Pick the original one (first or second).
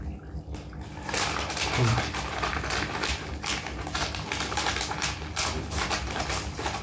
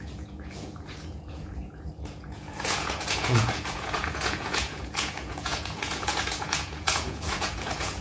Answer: first